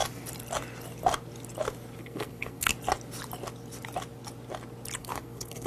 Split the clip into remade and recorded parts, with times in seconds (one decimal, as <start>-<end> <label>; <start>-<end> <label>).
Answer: 0.0-2.0 recorded; 2.0-2.7 remade; 2.7-5.0 recorded; 5.0-5.7 remade